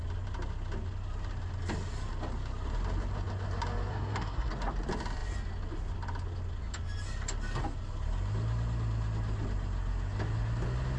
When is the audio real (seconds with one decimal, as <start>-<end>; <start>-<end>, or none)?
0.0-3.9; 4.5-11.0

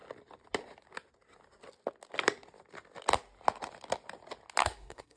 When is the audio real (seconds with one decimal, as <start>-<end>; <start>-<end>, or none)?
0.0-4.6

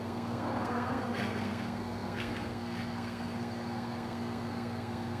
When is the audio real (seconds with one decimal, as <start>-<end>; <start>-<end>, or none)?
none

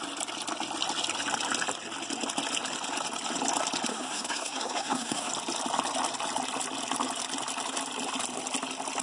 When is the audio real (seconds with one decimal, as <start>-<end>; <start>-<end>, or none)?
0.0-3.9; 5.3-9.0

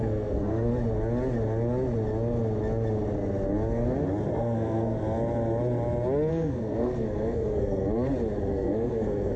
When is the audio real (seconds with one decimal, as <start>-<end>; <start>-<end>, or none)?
0.7-4.3; 5.0-6.3; 7.8-8.5